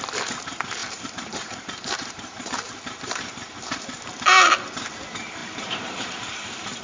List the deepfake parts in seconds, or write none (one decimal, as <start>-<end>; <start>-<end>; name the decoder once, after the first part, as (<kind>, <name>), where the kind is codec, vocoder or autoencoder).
0.8-4.0 (vocoder, BigVGAN v2); 5.4-6.8